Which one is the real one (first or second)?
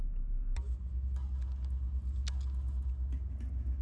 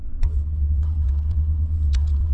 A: first